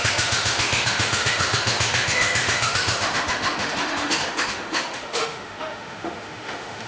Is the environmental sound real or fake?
fake